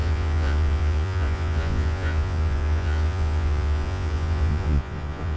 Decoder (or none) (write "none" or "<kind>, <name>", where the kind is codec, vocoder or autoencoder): vocoder, Vocos